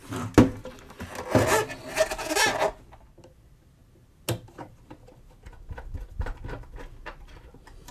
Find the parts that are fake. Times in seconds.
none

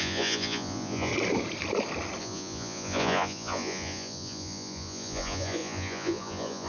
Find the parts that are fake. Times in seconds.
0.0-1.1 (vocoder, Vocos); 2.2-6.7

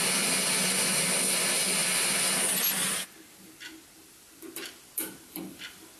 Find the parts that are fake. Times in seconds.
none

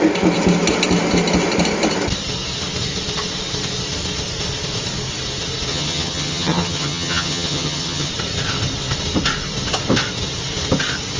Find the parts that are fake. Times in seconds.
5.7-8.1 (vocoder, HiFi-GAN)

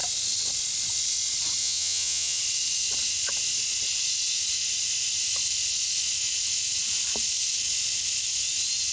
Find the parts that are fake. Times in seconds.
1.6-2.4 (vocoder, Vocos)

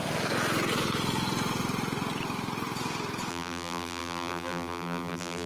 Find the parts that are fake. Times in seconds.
3.3-5.5 (vocoder, BigVGAN v2)